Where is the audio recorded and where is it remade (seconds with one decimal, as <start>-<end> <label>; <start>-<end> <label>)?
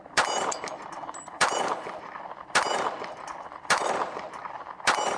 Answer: 0.0-5.2 remade